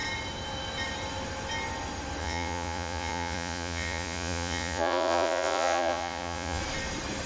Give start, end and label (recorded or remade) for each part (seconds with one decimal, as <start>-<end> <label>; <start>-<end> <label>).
0.0-2.2 recorded; 2.2-6.6 remade; 6.6-7.3 recorded

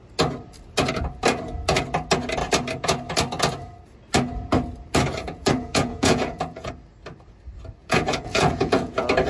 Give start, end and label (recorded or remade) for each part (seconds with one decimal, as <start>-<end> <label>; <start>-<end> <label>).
0.0-5.2 recorded; 5.2-6.7 remade; 6.7-7.8 recorded; 7.8-8.9 remade; 8.9-9.3 recorded

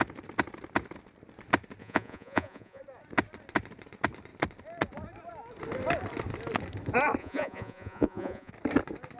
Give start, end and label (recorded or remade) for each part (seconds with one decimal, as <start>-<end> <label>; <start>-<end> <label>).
0.0-1.8 recorded; 1.8-2.8 remade; 2.8-7.2 recorded; 7.2-8.5 remade; 8.5-9.2 recorded

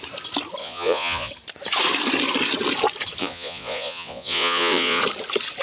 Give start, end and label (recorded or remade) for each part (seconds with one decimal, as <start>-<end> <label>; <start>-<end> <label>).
0.0-0.6 recorded; 0.6-1.3 remade; 1.3-3.2 recorded; 3.2-5.0 remade; 5.0-5.6 recorded

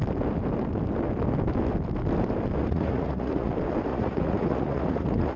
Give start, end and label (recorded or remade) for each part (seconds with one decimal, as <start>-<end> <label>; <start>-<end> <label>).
0.0-2.6 recorded; 2.6-3.5 remade; 3.5-3.9 recorded; 3.9-5.4 remade

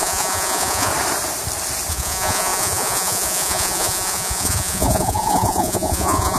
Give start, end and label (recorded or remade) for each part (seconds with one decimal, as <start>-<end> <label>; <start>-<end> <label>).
0.0-0.9 remade; 0.9-1.9 recorded; 1.9-6.4 remade